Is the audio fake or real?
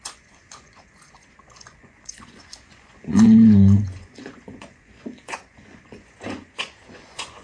fake